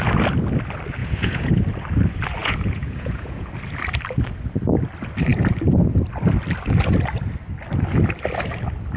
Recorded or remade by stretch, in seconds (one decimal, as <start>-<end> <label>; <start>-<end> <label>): 0.0-1.0 recorded; 1.0-1.5 remade; 1.5-2.4 recorded; 2.4-3.5 remade; 3.5-9.0 recorded